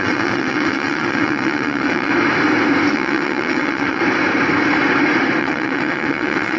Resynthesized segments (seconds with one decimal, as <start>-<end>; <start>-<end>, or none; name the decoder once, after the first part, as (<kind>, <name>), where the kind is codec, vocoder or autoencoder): 0.0-2.1 (vocoder, WaveNeXt); 2.9-4.0; 5.4-6.6

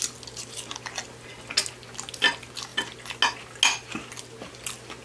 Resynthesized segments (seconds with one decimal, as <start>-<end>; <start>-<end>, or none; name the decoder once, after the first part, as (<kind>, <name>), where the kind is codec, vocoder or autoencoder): none

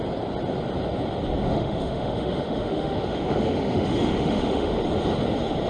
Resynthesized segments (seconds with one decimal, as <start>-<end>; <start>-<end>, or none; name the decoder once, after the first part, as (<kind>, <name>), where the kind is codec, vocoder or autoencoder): 1.4-4.8 (autoencoder, DAC-VAE)

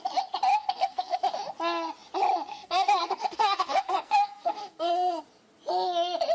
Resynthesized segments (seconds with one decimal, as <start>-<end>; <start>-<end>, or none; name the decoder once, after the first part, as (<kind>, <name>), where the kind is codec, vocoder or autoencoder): 0.5-1.2 (codec, SNAC); 2.5-5.2

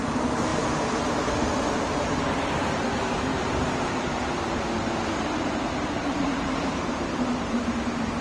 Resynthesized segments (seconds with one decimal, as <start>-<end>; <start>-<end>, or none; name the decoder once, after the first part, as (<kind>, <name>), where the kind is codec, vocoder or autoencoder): 3.3-8.2 (vocoder, BigVGAN v2)

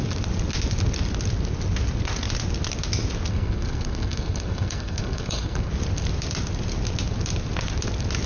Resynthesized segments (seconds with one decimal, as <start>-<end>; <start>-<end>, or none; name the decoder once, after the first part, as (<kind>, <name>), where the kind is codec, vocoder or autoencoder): 3.3-5.7 (codec, SNAC)

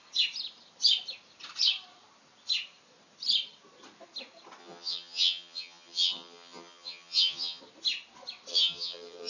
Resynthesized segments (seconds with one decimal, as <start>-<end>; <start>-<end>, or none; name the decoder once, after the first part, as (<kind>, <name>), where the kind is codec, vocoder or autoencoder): 4.6-7.6 (vocoder, HiFi-GAN); 8.5-9.3